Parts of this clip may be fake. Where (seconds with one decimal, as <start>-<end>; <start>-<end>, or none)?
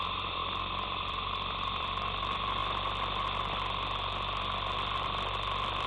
0.0-2.6; 5.0-5.9